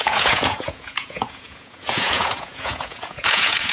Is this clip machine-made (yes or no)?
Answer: yes